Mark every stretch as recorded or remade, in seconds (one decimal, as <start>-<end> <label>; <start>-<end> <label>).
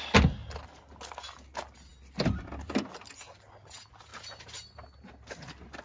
0.0-5.8 recorded